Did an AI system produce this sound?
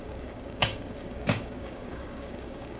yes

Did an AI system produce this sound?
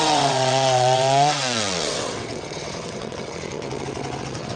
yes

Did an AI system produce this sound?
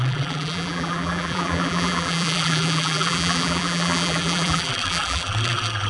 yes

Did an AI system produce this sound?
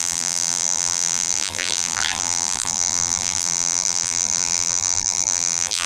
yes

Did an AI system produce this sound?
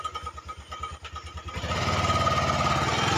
no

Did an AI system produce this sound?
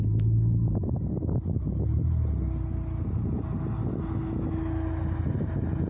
no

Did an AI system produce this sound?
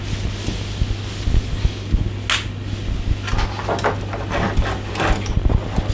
no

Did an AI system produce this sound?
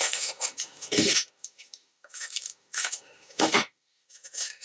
yes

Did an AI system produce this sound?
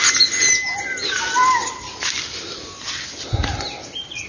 no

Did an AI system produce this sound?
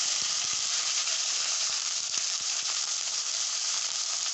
yes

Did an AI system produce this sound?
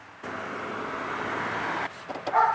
no